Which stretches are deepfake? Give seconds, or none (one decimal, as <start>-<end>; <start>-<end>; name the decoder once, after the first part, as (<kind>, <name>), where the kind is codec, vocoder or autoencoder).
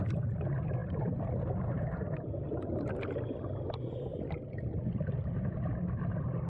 none